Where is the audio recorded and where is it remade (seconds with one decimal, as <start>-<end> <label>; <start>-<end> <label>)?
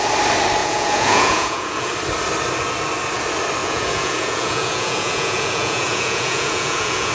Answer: 0.0-0.6 recorded; 0.6-1.9 remade; 1.9-3.6 recorded; 3.6-7.1 remade